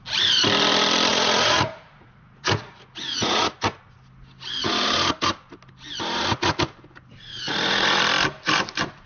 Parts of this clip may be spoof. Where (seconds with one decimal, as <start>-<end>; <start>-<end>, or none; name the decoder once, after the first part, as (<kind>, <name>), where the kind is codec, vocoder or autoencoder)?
1.1-3.6 (vocoder, Vocos); 7.1-8.0